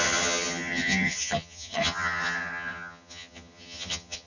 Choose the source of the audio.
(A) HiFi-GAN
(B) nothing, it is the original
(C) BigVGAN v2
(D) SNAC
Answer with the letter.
A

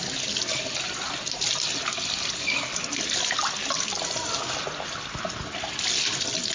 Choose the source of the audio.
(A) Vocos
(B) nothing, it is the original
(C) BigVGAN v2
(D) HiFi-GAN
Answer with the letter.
B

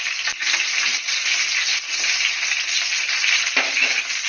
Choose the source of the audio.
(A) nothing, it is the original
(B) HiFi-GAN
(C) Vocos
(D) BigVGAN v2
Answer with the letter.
A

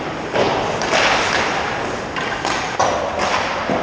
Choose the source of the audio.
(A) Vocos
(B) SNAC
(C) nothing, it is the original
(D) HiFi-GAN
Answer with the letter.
C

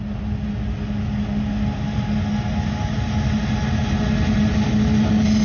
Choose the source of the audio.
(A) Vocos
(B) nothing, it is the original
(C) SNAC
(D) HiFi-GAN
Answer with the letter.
B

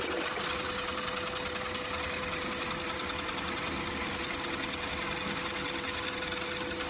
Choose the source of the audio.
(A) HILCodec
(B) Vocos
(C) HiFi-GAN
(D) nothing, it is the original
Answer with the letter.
D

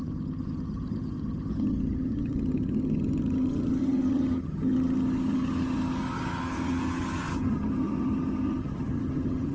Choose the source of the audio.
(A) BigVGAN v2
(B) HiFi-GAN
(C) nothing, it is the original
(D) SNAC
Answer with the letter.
B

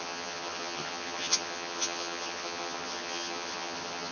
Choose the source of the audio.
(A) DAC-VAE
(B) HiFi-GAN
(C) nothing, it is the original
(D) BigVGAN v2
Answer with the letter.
B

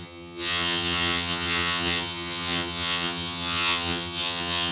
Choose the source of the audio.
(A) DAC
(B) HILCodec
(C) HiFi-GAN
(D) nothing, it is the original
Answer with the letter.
C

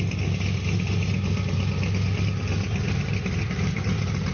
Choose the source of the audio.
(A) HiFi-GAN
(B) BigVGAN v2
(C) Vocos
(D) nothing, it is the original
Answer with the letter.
D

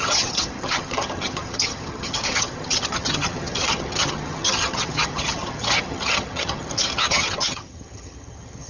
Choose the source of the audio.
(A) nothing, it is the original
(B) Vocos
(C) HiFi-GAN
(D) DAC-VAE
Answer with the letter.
C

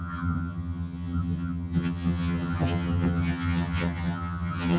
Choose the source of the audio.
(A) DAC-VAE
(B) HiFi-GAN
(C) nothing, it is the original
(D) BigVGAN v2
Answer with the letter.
B